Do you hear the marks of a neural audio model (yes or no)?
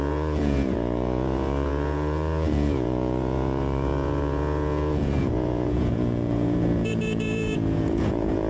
yes